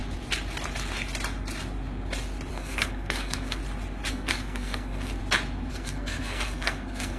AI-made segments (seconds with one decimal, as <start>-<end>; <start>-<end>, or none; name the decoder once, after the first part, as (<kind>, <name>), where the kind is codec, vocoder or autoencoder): 2.5-3.6 (codec, SNAC); 4.1-5.2; 5.7-7.2